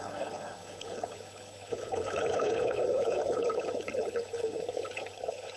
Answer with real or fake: fake